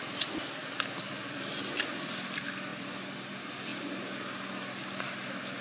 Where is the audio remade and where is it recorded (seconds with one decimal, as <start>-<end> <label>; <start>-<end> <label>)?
0.0-5.6 recorded